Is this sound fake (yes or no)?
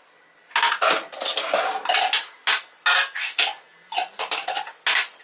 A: no